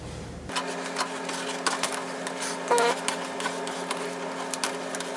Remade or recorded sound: recorded